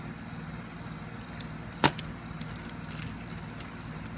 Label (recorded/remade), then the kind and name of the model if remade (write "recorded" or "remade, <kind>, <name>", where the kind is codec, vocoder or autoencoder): recorded